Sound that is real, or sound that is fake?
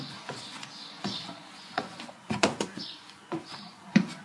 fake